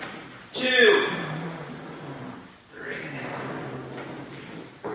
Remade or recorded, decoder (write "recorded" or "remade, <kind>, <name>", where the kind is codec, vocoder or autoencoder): recorded